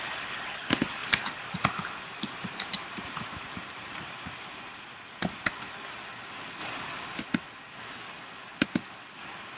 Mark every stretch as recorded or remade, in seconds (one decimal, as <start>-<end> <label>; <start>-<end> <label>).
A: 0.0-1.0 recorded; 1.0-4.6 remade; 4.6-6.6 recorded; 6.6-7.2 remade; 7.2-9.6 recorded